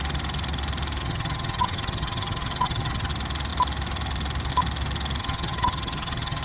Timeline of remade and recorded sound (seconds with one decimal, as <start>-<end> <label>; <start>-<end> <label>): 0.0-1.0 recorded; 1.0-3.1 remade; 3.1-5.2 recorded; 5.2-6.4 remade